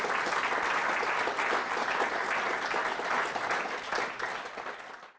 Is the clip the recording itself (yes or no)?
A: yes